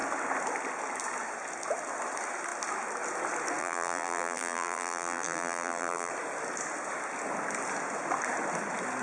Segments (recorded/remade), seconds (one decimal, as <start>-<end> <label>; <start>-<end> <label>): 0.0-3.6 recorded; 3.6-6.1 remade; 6.1-9.0 recorded